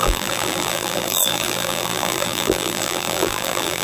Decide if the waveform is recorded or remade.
remade